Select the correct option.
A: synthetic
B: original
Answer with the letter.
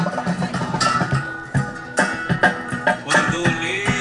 A